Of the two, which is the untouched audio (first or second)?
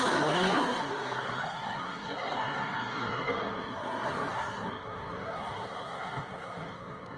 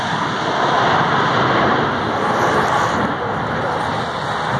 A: second